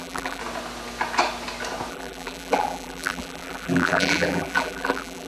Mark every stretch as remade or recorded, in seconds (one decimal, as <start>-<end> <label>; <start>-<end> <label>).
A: 0.0-0.4 remade; 0.4-1.9 recorded; 1.9-5.3 remade